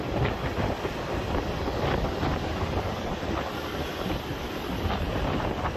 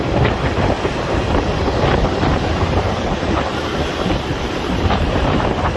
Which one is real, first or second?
first